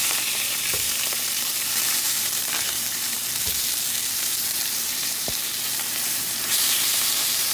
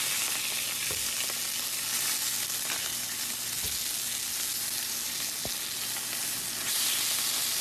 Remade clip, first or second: first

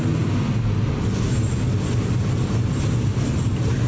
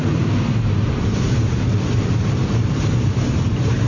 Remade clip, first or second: second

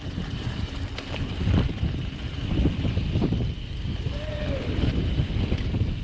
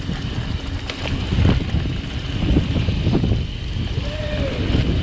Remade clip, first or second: first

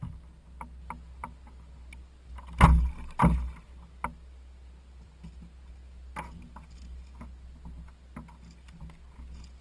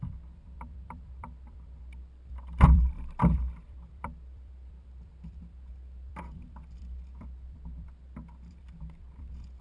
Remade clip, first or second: second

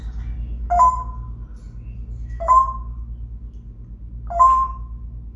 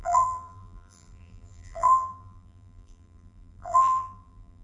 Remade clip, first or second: second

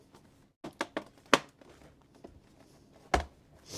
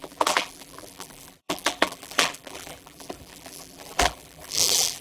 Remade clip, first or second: second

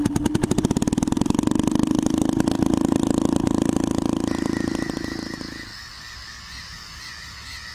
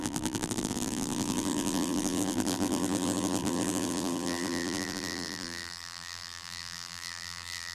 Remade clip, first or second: second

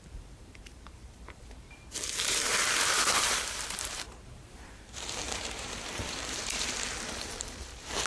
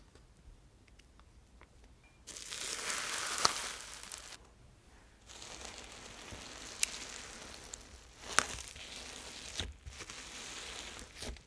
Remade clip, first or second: first